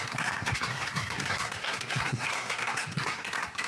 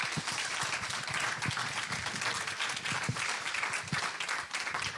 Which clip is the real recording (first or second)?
second